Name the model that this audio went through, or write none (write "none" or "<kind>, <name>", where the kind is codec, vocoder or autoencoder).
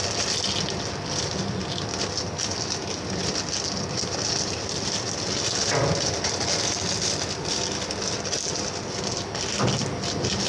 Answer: none